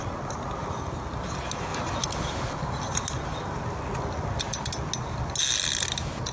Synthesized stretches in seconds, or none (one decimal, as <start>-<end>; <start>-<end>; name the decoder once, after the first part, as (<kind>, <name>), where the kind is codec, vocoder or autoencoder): none